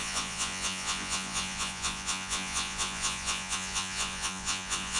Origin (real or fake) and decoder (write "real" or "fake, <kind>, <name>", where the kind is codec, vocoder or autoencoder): fake, vocoder, Vocos